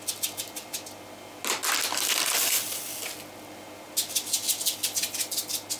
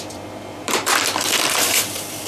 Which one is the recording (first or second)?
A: first